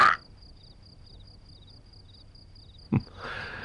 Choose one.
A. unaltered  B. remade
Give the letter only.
A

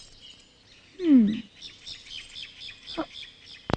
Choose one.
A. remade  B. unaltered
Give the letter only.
B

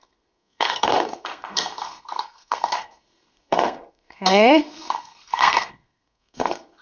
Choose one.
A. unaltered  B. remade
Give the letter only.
B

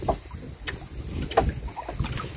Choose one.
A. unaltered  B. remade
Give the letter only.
A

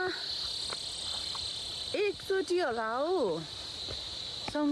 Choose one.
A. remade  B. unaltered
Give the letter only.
B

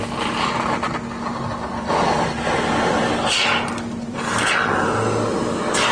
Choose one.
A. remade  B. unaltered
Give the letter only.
B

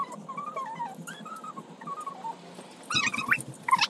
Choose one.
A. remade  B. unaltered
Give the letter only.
B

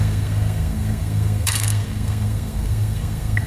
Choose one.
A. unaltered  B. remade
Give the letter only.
B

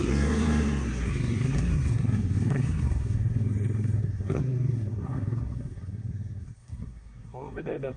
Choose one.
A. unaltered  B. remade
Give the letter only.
B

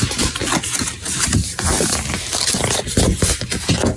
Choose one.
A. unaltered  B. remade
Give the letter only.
A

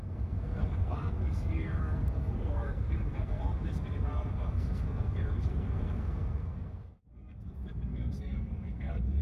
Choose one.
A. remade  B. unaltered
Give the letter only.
A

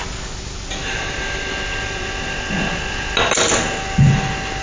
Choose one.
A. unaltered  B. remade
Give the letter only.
A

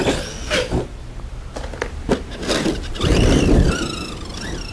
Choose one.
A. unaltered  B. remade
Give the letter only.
A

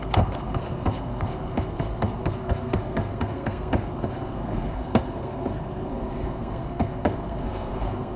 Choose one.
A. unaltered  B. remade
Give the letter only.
B